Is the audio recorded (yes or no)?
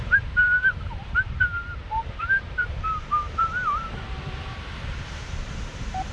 no